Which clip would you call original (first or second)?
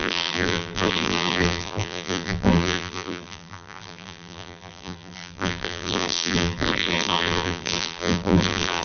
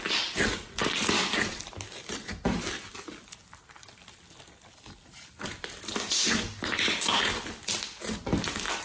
second